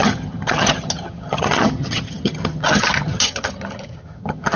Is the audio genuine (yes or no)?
no